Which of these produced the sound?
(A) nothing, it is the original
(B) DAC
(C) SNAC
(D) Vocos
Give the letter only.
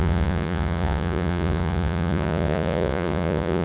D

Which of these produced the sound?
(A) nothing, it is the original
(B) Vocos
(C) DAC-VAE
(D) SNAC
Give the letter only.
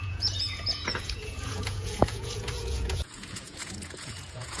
B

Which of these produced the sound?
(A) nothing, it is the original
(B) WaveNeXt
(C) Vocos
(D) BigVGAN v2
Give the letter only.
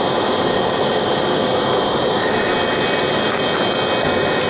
A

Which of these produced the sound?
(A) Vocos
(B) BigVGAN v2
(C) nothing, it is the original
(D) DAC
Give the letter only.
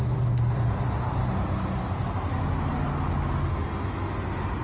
C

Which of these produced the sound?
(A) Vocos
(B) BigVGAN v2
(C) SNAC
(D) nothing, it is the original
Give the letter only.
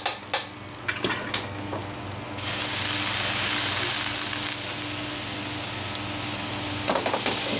D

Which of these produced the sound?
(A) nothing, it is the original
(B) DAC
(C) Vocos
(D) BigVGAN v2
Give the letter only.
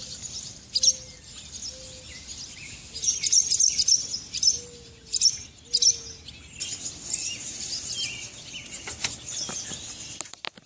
A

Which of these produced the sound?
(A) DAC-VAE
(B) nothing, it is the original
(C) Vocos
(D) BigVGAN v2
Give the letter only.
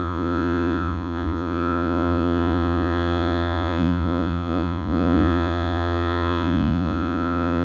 C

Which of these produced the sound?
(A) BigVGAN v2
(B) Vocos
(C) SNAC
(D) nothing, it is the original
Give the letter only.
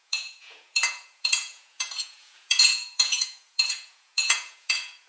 B